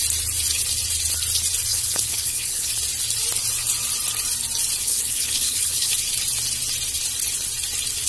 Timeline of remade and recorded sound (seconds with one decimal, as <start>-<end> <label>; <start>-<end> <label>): 0.0-1.7 recorded; 1.7-2.7 remade; 2.7-4.8 recorded; 4.8-5.9 remade; 5.9-8.1 recorded